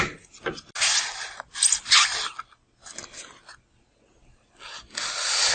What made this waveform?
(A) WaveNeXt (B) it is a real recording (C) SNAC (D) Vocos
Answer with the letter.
B